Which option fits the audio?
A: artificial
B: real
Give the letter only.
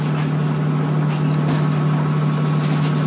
B